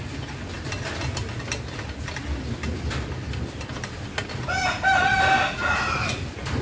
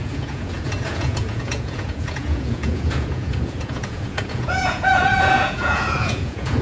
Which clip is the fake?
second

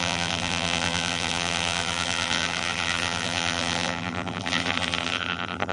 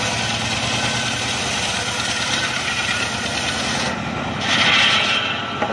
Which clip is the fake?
first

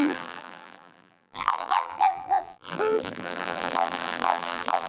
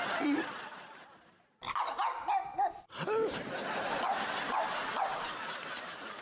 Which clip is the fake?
first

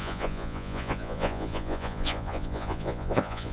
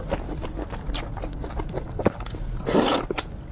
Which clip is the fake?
first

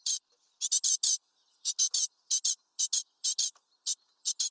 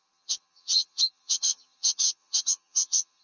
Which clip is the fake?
second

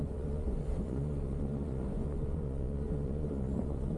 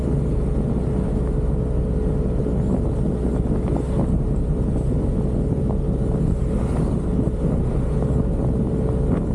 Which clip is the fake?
first